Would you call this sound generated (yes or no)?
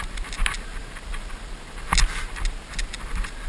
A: yes